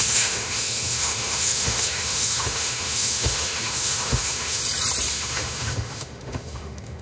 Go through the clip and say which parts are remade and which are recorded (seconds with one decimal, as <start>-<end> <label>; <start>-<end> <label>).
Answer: 0.0-4.6 remade; 4.6-5.1 recorded; 5.1-7.0 remade